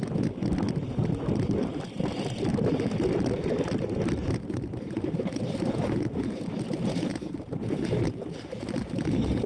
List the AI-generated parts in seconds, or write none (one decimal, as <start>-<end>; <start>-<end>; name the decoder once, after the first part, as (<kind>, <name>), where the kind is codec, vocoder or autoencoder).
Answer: 7.1-7.8 (vocoder, BigVGAN v2)